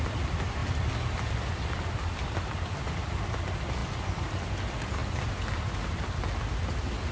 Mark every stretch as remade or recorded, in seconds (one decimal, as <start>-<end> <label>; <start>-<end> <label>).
0.0-7.1 recorded